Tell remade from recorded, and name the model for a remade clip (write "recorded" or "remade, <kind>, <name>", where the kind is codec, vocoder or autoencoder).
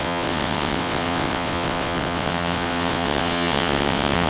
remade, vocoder, WaveNeXt